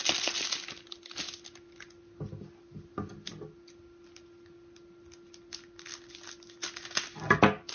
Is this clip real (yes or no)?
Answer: yes